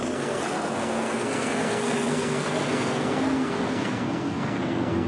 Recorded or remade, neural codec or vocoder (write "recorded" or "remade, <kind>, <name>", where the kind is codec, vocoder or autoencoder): remade, codec, SNAC